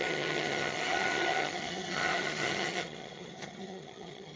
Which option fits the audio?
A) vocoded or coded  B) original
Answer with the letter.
A